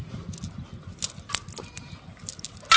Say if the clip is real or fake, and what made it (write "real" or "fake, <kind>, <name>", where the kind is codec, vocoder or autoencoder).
real